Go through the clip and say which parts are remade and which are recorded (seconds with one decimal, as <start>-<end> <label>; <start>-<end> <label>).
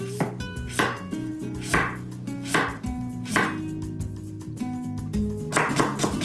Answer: 0.0-6.2 recorded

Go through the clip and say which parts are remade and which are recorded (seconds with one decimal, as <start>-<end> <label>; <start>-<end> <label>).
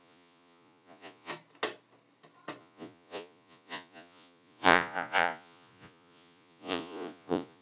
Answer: 0.0-1.3 remade; 1.3-2.6 recorded; 2.6-7.6 remade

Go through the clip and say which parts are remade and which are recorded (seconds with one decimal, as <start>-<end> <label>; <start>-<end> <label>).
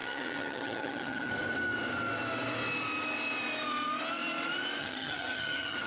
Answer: 0.0-1.3 remade; 1.3-4.8 recorded; 4.8-5.9 remade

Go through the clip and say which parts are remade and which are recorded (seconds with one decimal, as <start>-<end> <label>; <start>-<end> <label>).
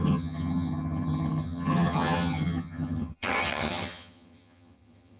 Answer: 0.0-5.2 remade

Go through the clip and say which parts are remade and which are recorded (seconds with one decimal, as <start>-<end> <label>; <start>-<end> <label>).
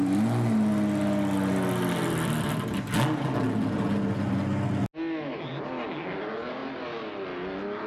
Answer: 0.0-7.9 recorded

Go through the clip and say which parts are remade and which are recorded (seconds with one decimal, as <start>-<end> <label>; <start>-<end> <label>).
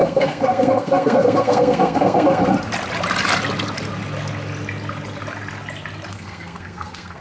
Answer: 0.0-2.4 remade; 2.4-6.1 recorded; 6.1-7.2 remade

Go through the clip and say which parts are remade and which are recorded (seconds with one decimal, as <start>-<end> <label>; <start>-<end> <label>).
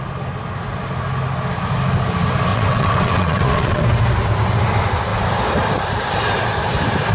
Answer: 0.0-2.5 recorded; 2.5-3.8 remade; 3.8-7.1 recorded